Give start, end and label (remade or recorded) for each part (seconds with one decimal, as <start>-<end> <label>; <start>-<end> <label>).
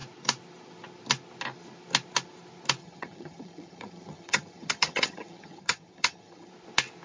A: 0.0-2.8 recorded; 2.8-6.5 remade; 6.5-7.0 recorded